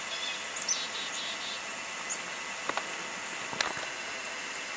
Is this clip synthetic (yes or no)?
no